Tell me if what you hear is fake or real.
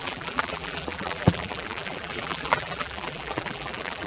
fake